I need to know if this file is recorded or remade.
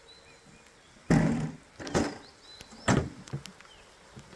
recorded